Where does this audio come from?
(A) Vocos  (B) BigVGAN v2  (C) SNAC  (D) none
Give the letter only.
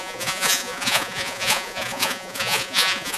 A